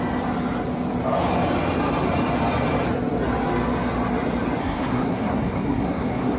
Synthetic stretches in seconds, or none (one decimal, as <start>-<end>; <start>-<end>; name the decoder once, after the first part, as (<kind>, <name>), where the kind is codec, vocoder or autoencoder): 4.6-6.4 (codec, SNAC)